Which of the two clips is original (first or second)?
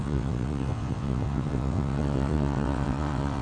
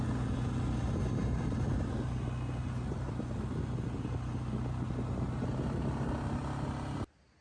second